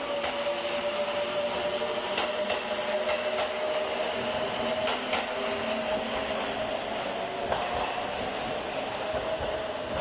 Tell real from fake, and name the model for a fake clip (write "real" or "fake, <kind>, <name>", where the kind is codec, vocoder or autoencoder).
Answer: real